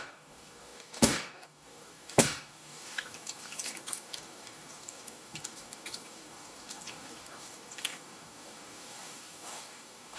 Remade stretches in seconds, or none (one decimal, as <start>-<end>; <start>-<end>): 0.0-10.2

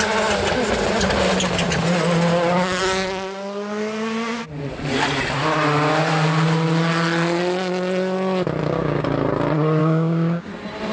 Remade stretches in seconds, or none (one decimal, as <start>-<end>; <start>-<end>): 8.6-9.1; 9.8-10.5

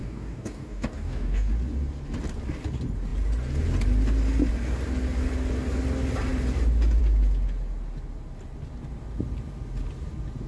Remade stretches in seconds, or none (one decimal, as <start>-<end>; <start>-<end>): 0.0-1.5

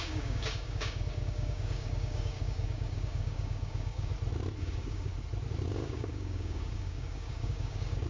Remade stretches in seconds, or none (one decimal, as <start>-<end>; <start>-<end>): 0.0-4.1; 4.6-5.1; 5.7-8.1

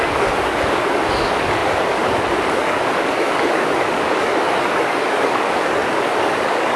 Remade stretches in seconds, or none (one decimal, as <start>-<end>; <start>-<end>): 0.0-6.8

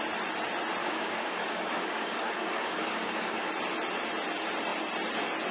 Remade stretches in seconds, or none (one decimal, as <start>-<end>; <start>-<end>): 0.8-3.5

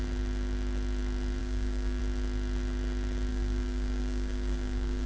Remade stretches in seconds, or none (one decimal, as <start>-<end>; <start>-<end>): 1.4-2.0; 3.3-5.1

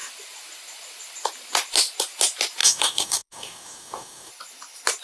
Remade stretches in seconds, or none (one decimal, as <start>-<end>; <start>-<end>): 2.6-4.3